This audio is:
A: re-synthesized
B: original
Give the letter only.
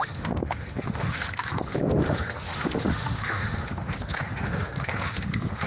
A